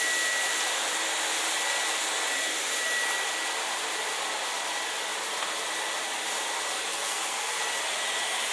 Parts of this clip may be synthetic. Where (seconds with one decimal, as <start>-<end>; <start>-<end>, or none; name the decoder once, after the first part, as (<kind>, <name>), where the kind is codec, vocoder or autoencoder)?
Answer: 6.9-7.6 (codec, SNAC)